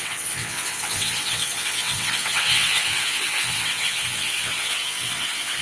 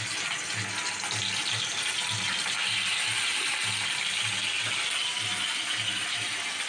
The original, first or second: second